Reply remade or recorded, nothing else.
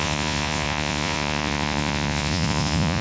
remade